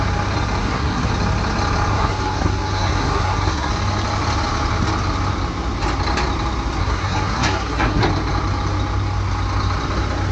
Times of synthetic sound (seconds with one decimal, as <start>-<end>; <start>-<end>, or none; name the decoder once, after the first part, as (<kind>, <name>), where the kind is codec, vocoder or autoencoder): 0.6-1.1 (codec, SNAC); 1.9-3.7; 6.8-8.0